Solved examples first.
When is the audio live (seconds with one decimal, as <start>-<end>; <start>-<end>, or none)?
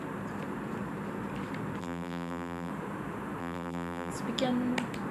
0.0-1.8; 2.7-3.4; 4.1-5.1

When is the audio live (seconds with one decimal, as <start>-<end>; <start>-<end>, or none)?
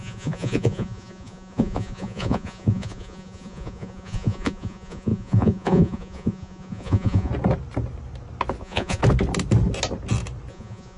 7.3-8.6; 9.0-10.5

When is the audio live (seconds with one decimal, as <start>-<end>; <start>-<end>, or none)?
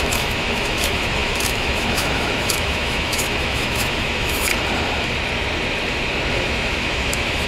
4.5-6.3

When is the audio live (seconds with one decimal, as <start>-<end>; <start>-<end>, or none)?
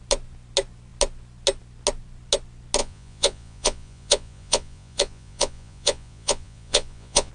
0.0-2.8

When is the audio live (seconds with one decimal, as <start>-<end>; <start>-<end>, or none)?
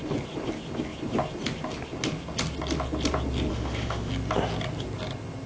0.0-3.5; 4.1-5.5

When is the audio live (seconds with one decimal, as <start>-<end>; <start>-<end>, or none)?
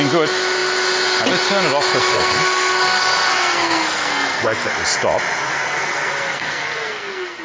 0.0-2.0; 4.7-5.4